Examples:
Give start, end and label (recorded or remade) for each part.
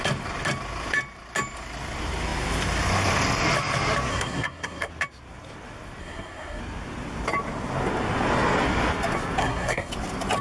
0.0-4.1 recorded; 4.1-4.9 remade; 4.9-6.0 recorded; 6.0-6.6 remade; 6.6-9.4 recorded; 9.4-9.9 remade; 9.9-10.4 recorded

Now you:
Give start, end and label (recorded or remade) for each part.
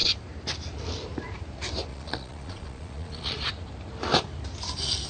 0.0-1.9 recorded; 1.9-3.5 remade; 3.5-5.1 recorded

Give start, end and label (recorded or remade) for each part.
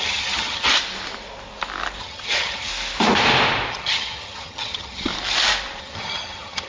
0.0-0.7 remade; 0.7-2.0 recorded; 2.0-2.7 remade; 2.7-3.7 recorded; 3.7-5.1 remade; 5.1-5.8 recorded; 5.8-6.7 remade